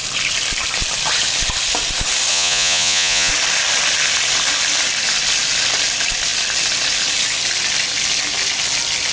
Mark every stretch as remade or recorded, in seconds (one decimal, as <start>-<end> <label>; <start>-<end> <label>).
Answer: 0.0-2.3 recorded; 2.3-3.3 remade; 3.3-9.1 recorded